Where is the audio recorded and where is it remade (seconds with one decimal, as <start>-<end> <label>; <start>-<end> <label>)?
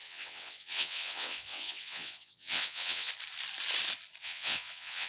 0.0-3.1 remade; 3.1-4.2 recorded; 4.2-5.1 remade